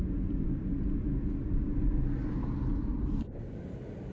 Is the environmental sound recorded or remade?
recorded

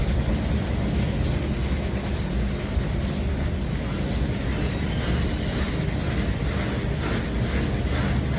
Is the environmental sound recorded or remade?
recorded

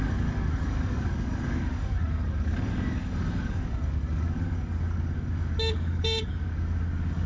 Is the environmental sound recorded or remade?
remade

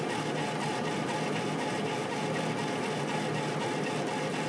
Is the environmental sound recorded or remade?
recorded